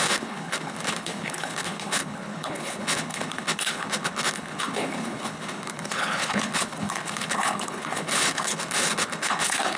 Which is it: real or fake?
fake